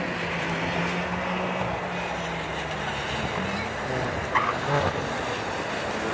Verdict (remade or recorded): recorded